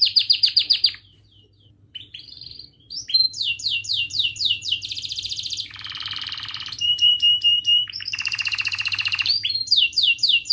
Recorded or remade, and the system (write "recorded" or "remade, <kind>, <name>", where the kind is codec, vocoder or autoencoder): remade, vocoder, BigVGAN v2